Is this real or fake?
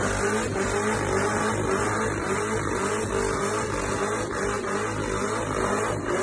real